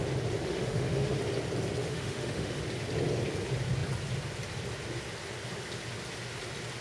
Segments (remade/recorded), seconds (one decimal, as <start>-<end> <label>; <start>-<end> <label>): 0.0-0.4 recorded; 0.4-1.2 remade; 1.2-1.8 recorded; 1.8-2.6 remade; 2.6-6.8 recorded